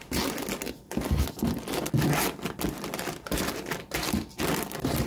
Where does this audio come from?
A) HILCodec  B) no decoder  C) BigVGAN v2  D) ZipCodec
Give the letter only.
B